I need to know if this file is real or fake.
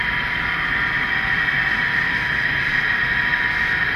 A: real